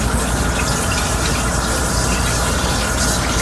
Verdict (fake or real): real